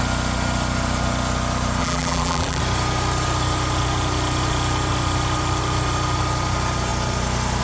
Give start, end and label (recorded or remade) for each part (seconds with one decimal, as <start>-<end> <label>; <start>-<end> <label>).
0.0-1.8 recorded; 1.8-2.6 remade; 2.6-7.6 recorded